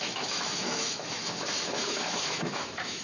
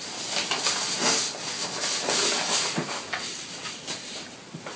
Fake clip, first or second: first